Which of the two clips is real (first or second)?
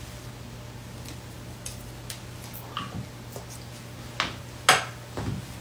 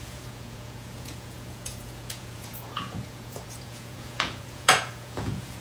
first